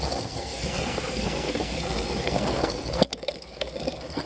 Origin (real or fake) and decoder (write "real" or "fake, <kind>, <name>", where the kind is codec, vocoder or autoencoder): fake, codec, SNAC